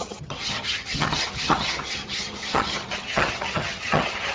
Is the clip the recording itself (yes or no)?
no